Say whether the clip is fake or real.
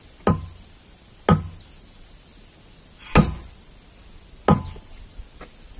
real